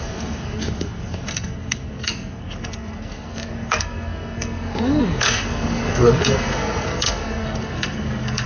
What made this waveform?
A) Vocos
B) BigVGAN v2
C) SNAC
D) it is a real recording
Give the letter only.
C